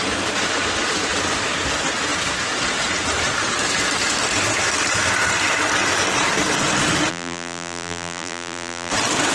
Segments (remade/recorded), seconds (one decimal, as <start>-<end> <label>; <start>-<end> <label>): 0.0-7.1 recorded; 7.1-8.9 remade; 8.9-9.3 recorded